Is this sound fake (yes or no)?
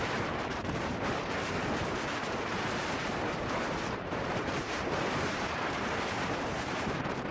yes